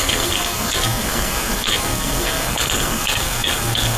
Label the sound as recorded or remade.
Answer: remade